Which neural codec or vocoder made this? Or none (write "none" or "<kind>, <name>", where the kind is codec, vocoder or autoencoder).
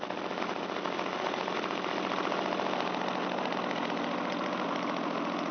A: none